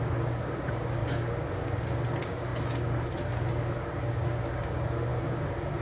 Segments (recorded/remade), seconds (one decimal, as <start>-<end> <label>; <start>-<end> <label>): 0.0-5.8 remade